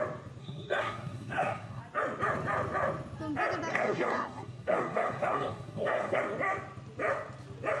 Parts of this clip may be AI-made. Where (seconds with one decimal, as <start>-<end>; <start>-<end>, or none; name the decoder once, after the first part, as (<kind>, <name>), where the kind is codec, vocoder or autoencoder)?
0.4-1.8 (codec, SNAC); 3.7-6.2